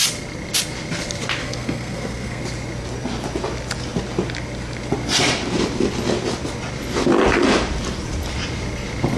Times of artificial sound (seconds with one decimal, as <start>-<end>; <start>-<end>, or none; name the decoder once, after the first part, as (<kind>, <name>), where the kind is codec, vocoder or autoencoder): 1.4-2.4 (codec, SNAC)